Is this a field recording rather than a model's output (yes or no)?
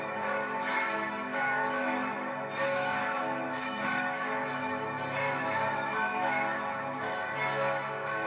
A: no